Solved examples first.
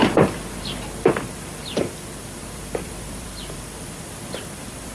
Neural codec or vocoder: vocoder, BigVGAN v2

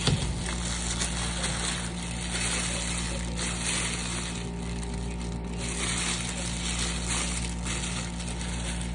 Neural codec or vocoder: none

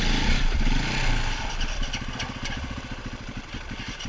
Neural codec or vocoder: none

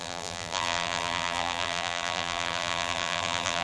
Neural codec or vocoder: vocoder, BigVGAN v2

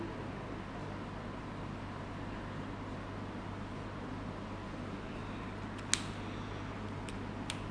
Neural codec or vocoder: none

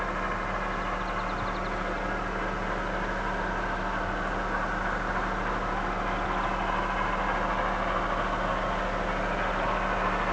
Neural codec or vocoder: none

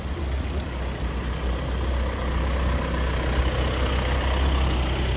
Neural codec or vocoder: none